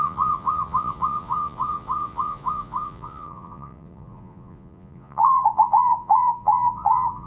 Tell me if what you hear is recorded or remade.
remade